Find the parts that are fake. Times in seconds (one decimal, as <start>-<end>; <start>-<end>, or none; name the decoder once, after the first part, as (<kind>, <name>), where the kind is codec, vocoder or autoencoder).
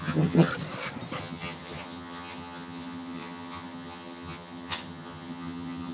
0.0-0.5 (vocoder, HiFi-GAN); 1.2-5.9